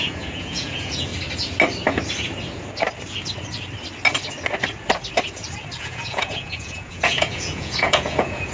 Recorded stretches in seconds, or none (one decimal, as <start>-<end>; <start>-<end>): 1.1-5.8